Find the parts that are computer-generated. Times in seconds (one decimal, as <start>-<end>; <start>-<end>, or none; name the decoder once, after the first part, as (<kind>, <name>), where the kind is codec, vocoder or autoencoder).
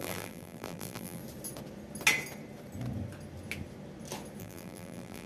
0.0-1.2 (vocoder, BigVGAN v2); 4.4-5.3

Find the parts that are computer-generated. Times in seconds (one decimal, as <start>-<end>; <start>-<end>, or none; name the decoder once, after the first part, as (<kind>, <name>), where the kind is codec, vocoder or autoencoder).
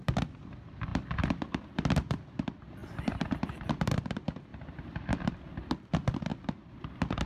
0.0-2.8 (vocoder, BigVGAN v2); 3.4-6.3; 6.8-7.3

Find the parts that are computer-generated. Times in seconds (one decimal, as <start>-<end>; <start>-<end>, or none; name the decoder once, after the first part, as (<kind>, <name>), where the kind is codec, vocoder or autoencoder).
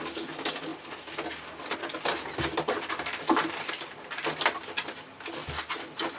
5.4-6.2 (vocoder, BigVGAN v2)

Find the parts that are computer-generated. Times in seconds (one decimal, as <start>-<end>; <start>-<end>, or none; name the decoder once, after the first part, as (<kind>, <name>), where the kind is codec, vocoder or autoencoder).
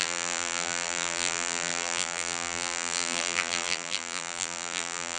0.0-5.2 (vocoder, BigVGAN v2)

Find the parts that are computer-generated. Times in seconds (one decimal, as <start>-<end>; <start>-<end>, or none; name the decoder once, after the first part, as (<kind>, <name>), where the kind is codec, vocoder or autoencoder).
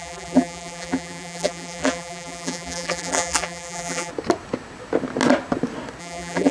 0.0-4.1 (vocoder, BigVGAN v2); 6.0-6.5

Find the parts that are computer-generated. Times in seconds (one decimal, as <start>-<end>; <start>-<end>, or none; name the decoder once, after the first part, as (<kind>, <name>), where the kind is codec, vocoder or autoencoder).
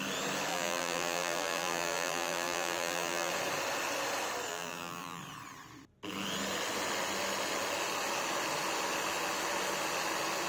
0.5-3.3 (vocoder, BigVGAN v2); 4.5-5.2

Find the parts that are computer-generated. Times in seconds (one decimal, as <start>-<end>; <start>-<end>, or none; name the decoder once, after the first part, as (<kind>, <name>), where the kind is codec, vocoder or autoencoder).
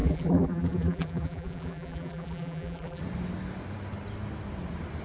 0.0-3.0 (vocoder, BigVGAN v2)